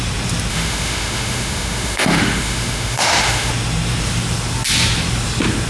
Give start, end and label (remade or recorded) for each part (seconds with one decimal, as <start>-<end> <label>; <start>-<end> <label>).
0.0-0.5 recorded; 0.5-3.5 remade; 3.5-5.7 recorded